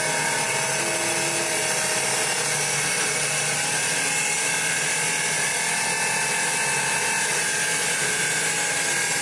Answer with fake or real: real